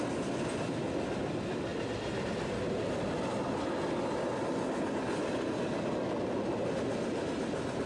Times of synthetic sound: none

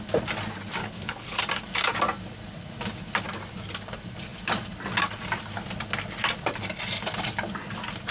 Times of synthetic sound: 0.8-1.4 (codec, HILCodec)

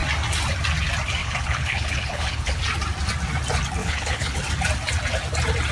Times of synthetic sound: 1.2-2.6 (codec, HILCodec); 3.8-4.4

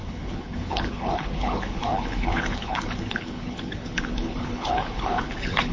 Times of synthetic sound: 0.0-5.7 (codec, HILCodec)

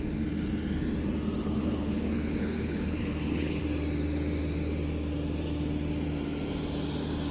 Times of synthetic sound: 1.4-3.6 (codec, HILCodec)